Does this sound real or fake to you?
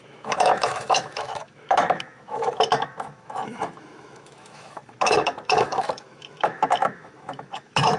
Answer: fake